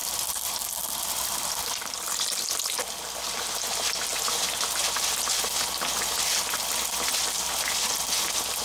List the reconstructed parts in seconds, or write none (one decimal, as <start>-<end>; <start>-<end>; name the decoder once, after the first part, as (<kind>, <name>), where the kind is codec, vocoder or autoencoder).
0.0-1.6 (vocoder, BigVGAN v2); 4.1-4.8